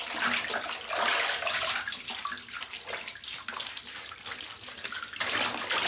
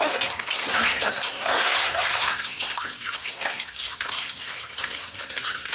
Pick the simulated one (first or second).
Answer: second